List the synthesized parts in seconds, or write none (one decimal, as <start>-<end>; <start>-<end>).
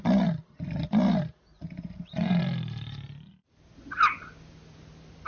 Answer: 1.5-2.4